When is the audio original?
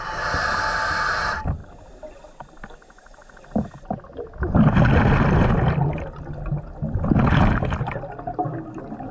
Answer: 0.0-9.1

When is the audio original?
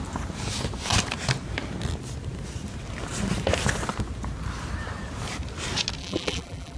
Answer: 0.0-6.0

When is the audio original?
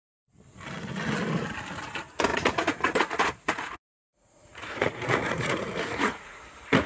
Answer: 0.0-2.3; 6.4-6.9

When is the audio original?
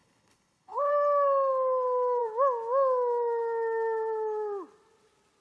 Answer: 0.9-5.4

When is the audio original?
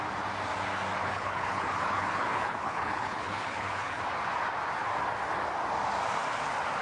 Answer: 0.0-1.0; 4.0-6.8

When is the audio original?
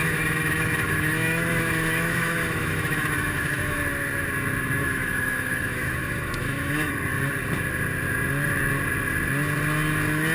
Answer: 3.8-4.8; 6.9-10.3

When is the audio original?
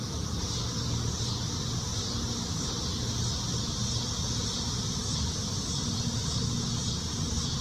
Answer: 0.0-7.6